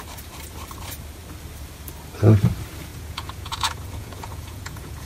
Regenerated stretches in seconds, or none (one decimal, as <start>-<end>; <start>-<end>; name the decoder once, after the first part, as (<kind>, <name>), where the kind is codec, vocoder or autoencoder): 2.9-5.1 (vocoder, Vocos)